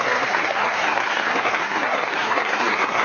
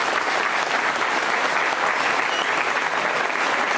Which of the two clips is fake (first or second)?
first